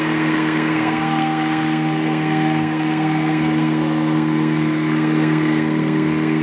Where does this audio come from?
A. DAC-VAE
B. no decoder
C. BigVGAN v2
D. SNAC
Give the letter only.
D